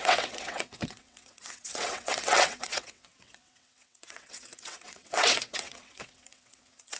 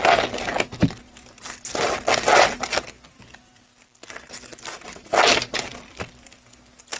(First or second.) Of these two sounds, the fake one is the first